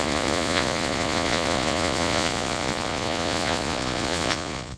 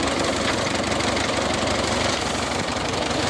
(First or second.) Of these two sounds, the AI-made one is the first